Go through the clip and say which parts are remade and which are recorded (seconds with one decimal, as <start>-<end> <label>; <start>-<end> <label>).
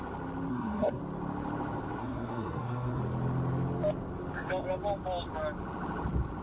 0.0-0.5 recorded; 0.5-1.0 remade; 1.0-2.0 recorded; 2.0-3.0 remade; 3.0-6.4 recorded